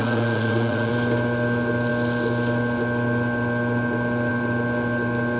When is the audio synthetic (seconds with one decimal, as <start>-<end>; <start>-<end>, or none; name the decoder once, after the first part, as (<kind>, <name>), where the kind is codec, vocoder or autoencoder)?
0.0-0.9 (vocoder, Vocos)